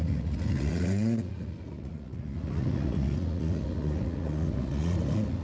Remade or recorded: remade